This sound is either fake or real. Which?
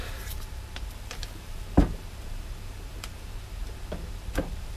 fake